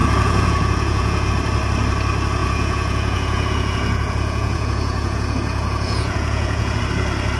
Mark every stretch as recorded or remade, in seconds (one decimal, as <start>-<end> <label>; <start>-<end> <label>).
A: 0.0-1.3 remade; 1.3-2.4 recorded; 2.4-6.8 remade; 6.8-7.4 recorded